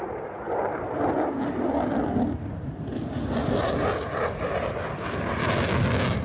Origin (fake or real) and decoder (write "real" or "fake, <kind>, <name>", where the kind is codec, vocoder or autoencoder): fake, vocoder, BigVGAN v2